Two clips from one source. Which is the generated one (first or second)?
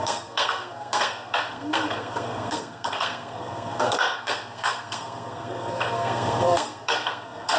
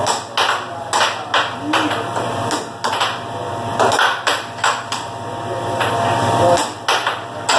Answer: first